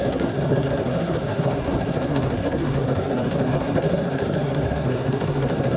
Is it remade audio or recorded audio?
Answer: remade